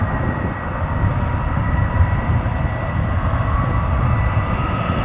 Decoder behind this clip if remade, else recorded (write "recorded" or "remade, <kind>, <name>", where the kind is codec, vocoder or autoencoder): recorded